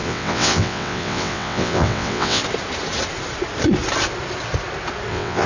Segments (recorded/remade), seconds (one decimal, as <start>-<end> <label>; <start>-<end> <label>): 0.0-2.4 remade; 2.4-5.1 recorded; 5.1-5.5 remade